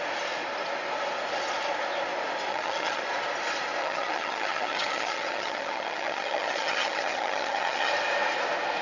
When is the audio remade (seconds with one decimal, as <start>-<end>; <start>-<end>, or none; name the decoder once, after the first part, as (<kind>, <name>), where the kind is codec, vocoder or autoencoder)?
2.5-3.0 (vocoder, HiFi-GAN); 3.8-7.9